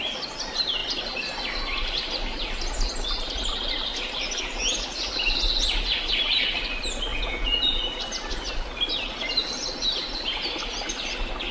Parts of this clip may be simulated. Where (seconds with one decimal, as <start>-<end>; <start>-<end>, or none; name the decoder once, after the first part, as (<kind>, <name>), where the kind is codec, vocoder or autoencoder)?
7.1-7.8 (vocoder, Vocos)